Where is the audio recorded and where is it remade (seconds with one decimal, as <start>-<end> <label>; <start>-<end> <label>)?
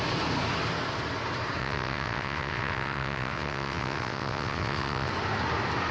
0.0-1.6 recorded; 1.6-5.1 remade; 5.1-5.9 recorded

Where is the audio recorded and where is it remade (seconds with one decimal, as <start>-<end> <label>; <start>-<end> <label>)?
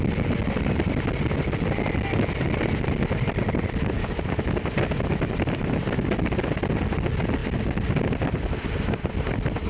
0.0-9.7 recorded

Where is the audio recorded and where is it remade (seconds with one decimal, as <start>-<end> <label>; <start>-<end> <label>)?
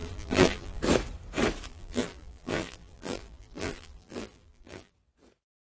0.0-0.8 remade; 0.8-1.7 recorded; 1.7-4.9 remade; 4.9-5.6 recorded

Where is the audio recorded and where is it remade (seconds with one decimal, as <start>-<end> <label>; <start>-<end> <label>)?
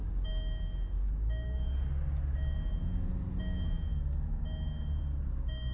0.0-5.7 recorded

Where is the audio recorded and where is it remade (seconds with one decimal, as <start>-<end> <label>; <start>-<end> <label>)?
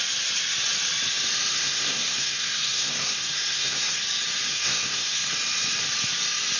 0.0-1.5 recorded; 1.5-4.0 remade; 4.0-4.5 recorded; 4.5-5.3 remade; 5.3-6.6 recorded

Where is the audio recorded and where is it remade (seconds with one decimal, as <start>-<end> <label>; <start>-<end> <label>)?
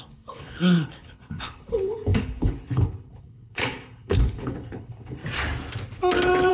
0.0-5.2 remade; 5.2-6.5 recorded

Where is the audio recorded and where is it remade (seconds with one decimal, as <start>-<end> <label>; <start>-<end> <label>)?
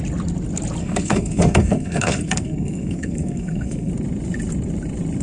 0.0-0.8 recorded; 0.8-3.9 remade; 3.9-5.2 recorded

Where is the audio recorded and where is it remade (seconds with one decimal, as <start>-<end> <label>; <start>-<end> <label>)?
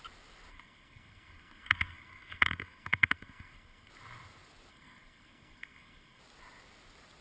0.0-0.5 recorded; 0.5-3.9 remade; 3.9-4.7 recorded; 4.7-6.2 remade; 6.2-7.2 recorded